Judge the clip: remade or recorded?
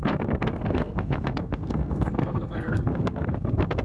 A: remade